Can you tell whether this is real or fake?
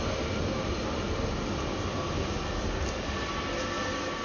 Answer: real